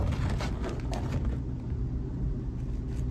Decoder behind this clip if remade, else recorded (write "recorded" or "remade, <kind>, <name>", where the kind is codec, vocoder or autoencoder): recorded